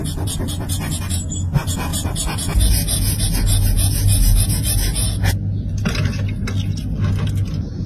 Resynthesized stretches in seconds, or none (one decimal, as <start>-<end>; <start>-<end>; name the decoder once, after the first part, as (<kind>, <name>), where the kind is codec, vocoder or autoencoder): none